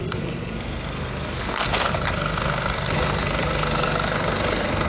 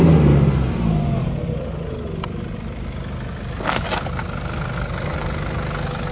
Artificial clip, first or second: first